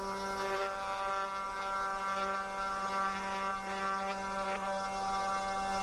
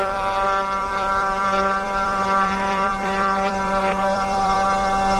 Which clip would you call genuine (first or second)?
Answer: first